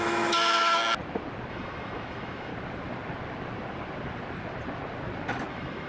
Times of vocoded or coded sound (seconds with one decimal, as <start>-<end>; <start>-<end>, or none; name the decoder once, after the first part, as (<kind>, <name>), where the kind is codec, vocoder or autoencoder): 0.0-0.8 (autoencoder, DAC-VAE); 1.5-2.5; 5.5-5.9

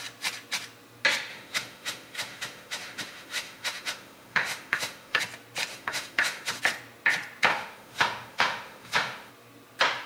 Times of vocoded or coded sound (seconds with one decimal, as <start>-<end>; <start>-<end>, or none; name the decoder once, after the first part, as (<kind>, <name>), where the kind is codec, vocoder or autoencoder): 1.3-5.2 (autoencoder, DAC-VAE); 5.7-6.6; 7.5-9.3

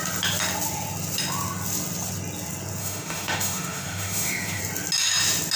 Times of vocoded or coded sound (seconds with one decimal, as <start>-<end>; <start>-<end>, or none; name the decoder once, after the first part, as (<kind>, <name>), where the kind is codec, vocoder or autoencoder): 2.8-4.6 (autoencoder, DAC-VAE)

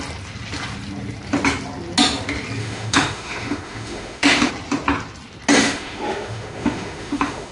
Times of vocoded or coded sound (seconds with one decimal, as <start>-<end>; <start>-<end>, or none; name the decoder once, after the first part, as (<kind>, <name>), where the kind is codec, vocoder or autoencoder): 2.6-4.5 (autoencoder, DAC-VAE); 5.6-7.5

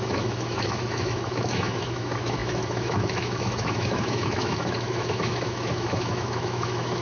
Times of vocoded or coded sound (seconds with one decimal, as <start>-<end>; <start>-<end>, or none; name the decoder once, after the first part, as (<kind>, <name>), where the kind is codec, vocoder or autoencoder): 0.0-7.0 (autoencoder, DAC-VAE)

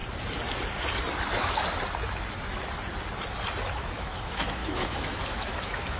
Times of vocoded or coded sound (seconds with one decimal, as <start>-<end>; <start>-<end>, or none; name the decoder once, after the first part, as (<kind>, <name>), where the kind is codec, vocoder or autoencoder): 3.6-6.0 (autoencoder, DAC-VAE)

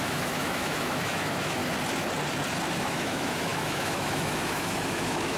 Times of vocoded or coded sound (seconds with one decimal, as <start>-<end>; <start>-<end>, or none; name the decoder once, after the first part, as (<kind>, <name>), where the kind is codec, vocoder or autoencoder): 0.0-1.6 (autoencoder, DAC-VAE); 2.8-5.4